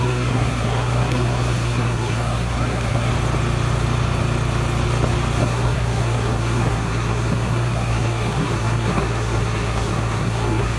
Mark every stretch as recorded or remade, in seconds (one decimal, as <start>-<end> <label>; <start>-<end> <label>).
0.0-3.1 remade; 3.1-5.4 recorded; 5.4-10.8 remade